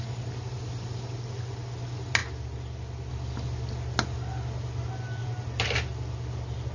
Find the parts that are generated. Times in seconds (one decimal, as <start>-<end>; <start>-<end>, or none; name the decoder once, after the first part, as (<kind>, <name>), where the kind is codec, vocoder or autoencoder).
none